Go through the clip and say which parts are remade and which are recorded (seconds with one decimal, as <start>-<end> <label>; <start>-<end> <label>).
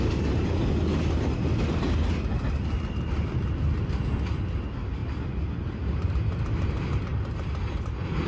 0.0-8.3 recorded